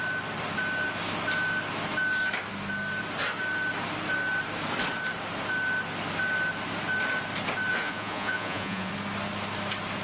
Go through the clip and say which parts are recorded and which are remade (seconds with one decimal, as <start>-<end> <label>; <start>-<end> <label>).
0.0-7.7 recorded; 7.7-8.9 remade; 8.9-10.0 recorded